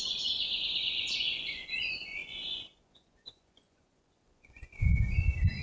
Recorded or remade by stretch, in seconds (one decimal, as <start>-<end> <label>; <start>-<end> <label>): 0.0-5.6 remade